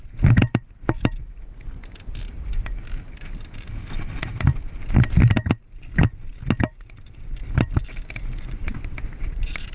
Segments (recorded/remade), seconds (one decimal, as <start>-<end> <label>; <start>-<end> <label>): 0.0-8.6 recorded; 8.6-9.7 remade